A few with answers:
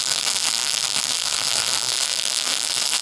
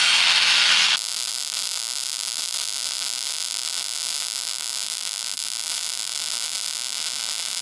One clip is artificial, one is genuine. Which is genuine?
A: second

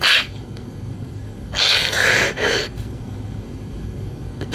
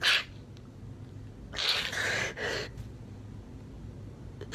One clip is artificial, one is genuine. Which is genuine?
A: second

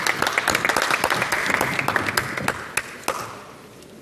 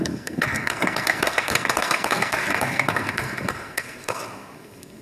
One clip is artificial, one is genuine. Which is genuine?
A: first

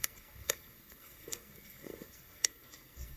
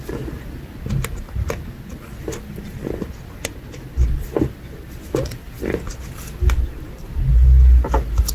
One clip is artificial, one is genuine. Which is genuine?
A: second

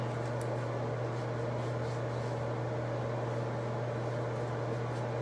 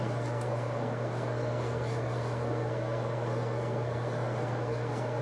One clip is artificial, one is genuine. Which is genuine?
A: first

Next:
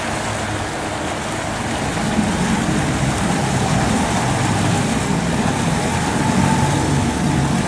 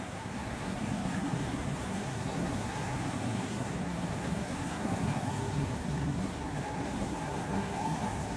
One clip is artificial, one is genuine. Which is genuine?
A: first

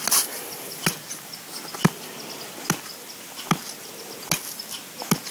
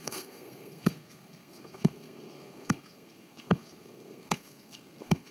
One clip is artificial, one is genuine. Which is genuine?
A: first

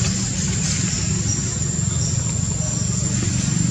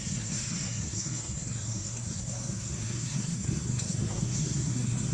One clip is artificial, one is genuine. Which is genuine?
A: first